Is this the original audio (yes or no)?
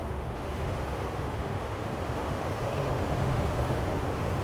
no